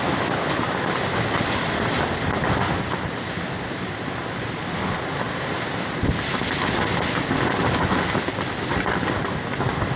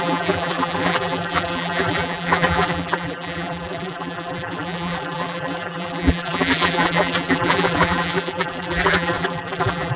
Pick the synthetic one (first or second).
second